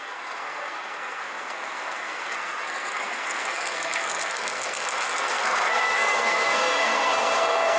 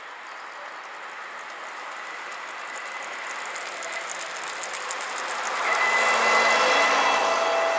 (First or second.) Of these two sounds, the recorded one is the second